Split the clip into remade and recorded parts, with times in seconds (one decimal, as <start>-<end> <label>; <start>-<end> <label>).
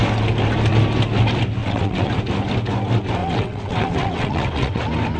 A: 0.0-1.6 recorded; 1.6-2.1 remade; 2.1-3.2 recorded; 3.2-4.8 remade; 4.8-5.2 recorded